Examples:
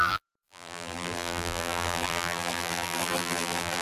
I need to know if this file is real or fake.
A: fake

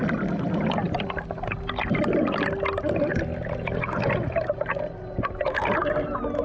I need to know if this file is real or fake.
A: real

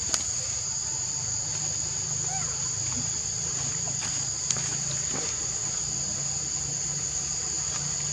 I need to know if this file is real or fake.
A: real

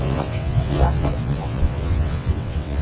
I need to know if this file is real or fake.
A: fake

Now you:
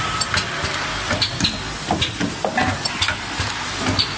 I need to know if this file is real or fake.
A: real